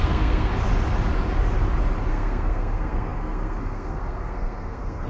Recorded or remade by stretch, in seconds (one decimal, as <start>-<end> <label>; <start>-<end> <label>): 0.0-0.5 remade; 0.5-2.1 recorded; 2.1-5.1 remade